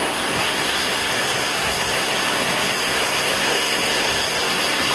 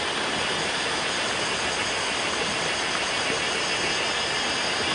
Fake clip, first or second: first